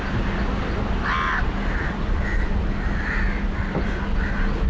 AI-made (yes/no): no